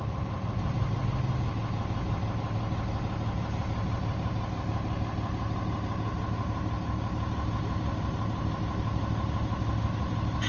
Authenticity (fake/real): real